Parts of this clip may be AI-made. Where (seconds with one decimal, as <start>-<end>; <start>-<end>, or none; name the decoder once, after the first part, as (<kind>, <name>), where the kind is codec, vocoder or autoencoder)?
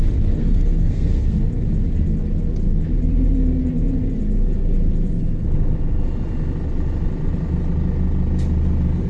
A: 0.4-1.5 (codec, SNAC)